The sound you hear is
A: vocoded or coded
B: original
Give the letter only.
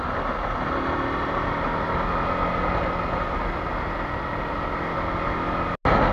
B